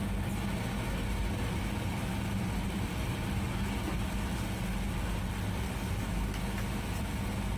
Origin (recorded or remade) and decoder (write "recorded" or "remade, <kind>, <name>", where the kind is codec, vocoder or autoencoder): recorded